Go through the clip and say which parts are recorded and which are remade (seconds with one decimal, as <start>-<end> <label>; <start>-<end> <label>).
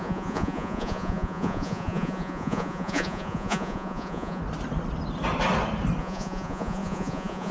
0.0-4.4 remade; 4.4-6.0 recorded; 6.0-7.5 remade